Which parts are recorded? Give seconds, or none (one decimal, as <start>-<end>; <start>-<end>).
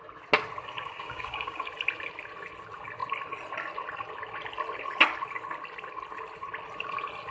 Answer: 0.0-0.9; 1.7-7.3